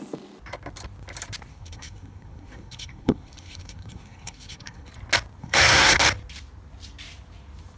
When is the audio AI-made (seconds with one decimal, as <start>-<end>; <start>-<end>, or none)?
1.5-4.9; 5.4-6.0